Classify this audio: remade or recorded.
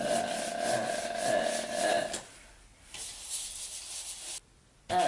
recorded